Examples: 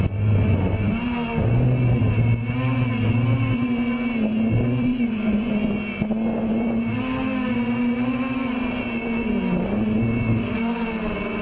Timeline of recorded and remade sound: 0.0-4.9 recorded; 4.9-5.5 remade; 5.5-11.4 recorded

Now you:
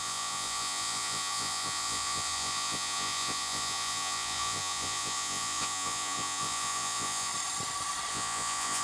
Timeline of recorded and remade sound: 0.0-7.3 remade; 7.3-8.1 recorded; 8.1-8.8 remade

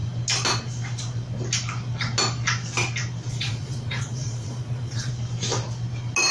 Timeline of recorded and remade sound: 0.0-3.3 recorded; 3.3-5.1 remade; 5.1-6.3 recorded

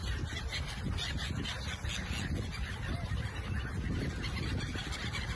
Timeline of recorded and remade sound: 0.0-5.4 recorded

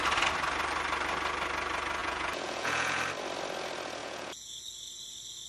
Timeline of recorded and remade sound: 0.0-2.0 recorded; 2.0-3.0 remade; 3.0-4.0 recorded; 4.0-5.5 remade

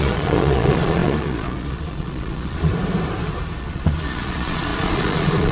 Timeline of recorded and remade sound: 0.0-2.7 remade; 2.7-3.6 recorded; 3.6-5.5 remade

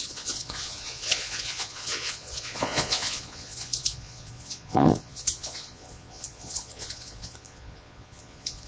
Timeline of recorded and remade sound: 0.0-8.7 remade

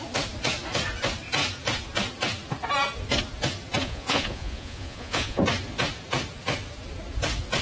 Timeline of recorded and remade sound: 0.0-3.8 recorded; 3.8-5.4 remade; 5.4-7.6 recorded